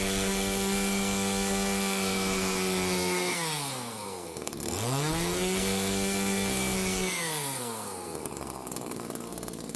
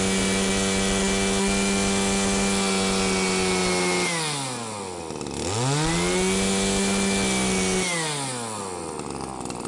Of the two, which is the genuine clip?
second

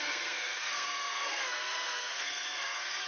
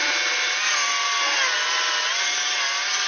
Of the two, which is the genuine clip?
second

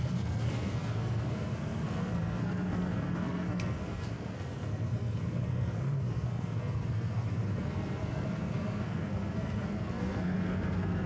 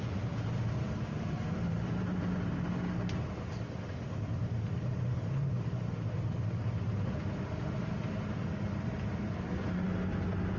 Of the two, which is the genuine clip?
second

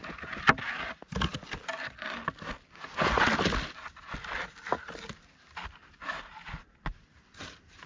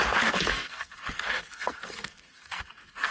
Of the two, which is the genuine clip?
first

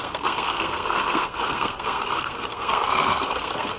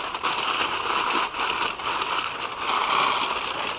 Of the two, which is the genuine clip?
second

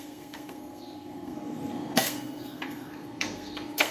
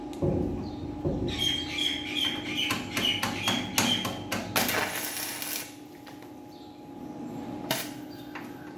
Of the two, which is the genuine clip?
second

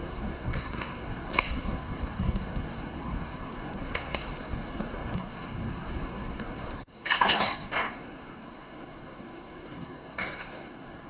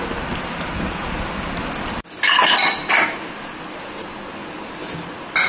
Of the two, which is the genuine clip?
second